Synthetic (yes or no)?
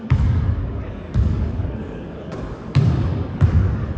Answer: yes